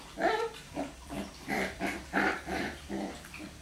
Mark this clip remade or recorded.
remade